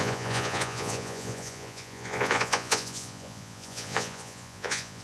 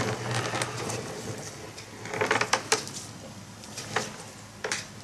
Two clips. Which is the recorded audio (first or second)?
second